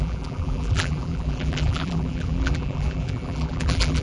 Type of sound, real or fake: fake